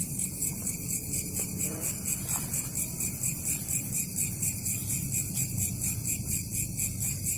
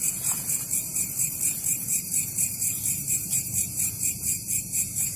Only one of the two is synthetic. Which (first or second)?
second